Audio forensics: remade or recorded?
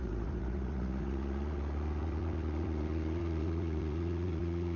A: remade